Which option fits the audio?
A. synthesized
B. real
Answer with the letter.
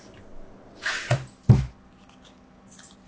B